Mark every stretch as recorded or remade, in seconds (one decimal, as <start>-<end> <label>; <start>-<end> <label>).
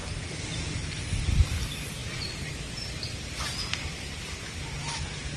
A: 0.0-1.1 remade; 1.1-2.0 recorded; 2.0-5.4 remade